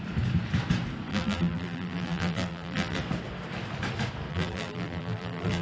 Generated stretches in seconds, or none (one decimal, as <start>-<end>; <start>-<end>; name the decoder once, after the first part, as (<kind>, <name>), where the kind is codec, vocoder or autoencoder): 1.1-3.0 (vocoder, BigVGAN v2); 4.3-5.6